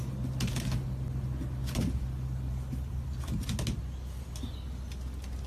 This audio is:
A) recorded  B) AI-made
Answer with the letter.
A